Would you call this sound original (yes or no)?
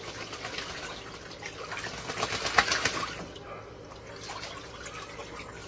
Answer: yes